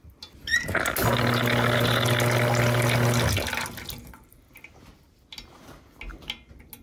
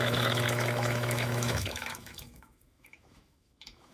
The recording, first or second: first